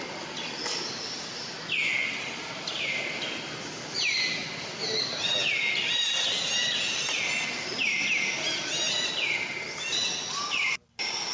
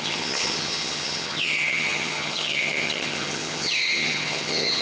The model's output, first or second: second